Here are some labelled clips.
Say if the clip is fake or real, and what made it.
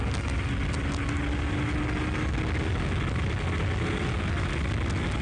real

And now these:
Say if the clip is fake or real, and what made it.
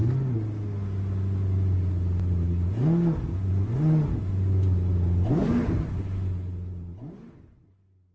real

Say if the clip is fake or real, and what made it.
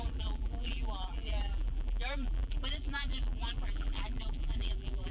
fake, vocoder, BigVGAN v2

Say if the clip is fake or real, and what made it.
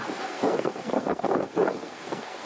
fake, codec, SNAC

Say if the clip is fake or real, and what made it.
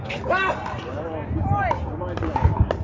real